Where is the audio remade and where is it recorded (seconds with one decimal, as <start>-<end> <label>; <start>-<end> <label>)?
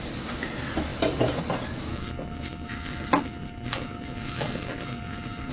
0.0-1.9 recorded; 1.9-5.5 remade